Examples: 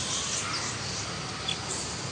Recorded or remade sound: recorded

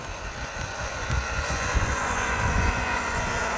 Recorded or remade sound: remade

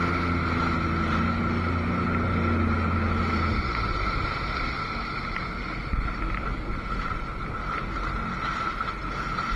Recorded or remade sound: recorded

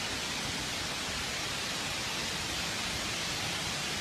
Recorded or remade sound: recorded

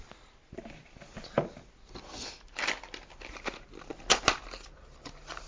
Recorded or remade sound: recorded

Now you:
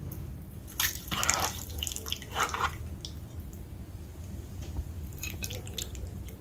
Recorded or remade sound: recorded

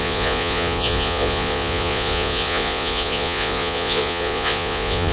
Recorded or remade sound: remade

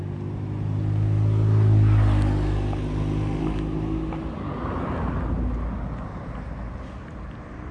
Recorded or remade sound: recorded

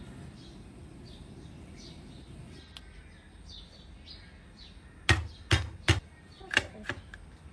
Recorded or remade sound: recorded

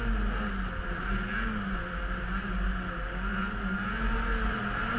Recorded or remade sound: recorded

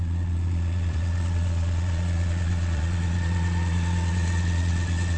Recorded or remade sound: remade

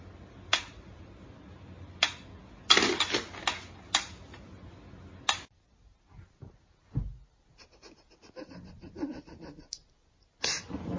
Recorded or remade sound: recorded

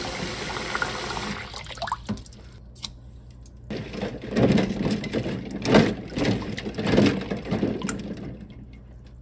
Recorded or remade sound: recorded